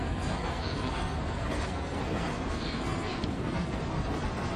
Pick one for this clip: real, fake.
fake